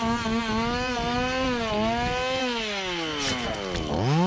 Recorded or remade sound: recorded